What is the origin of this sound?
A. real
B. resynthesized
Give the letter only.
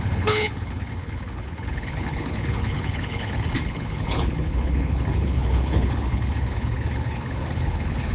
B